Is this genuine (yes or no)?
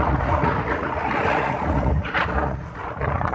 no